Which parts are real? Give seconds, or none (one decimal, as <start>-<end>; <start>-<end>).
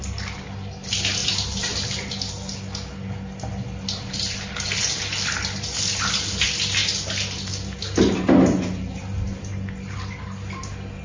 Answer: 0.0-11.0